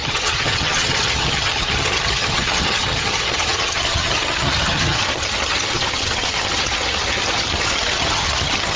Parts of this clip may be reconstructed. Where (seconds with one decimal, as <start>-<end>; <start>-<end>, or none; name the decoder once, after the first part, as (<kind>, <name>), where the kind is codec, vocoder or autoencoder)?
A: 0.0-8.8 (vocoder, HiFi-GAN)